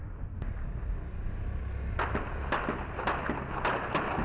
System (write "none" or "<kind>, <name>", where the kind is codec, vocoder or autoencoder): none